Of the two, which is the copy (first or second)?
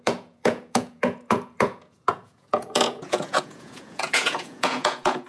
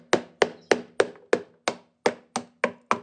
first